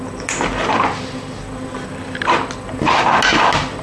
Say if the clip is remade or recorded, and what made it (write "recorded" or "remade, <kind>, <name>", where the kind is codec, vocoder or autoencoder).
recorded